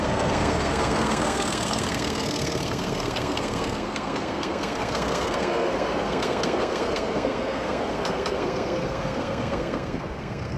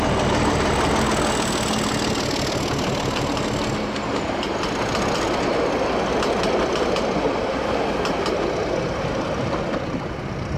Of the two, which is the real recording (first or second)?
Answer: second